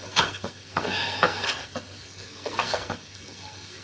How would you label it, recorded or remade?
remade